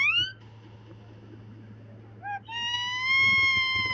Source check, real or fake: real